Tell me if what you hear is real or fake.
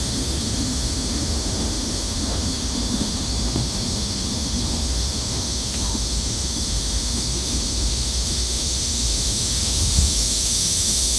fake